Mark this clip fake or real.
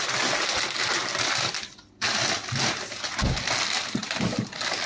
real